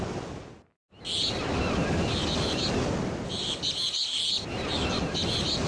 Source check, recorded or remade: recorded